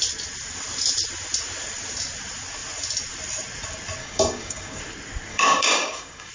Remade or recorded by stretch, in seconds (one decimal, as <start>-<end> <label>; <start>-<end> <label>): 0.0-4.0 recorded; 4.0-4.8 remade; 4.8-5.3 recorded; 5.3-6.3 remade